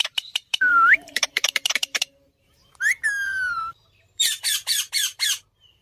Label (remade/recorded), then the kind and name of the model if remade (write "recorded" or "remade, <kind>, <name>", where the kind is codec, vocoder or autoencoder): remade, vocoder, BigVGAN v2